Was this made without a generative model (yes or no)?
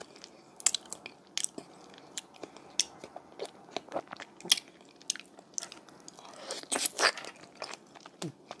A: yes